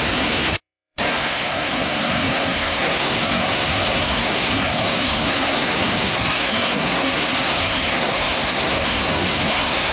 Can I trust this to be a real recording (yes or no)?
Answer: no